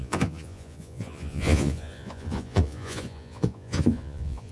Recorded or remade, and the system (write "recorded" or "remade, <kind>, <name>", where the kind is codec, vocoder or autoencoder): remade, vocoder, Vocos